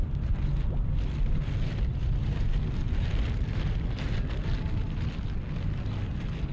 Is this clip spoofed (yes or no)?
no